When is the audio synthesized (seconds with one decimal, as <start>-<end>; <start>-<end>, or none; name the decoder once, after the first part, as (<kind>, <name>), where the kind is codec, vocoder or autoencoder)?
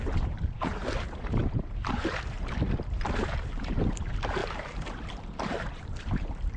0.0-0.7 (vocoder, BigVGAN v2); 1.4-6.6